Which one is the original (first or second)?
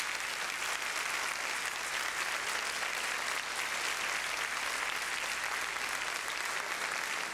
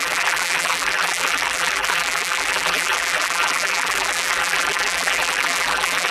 first